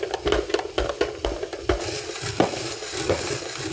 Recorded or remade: recorded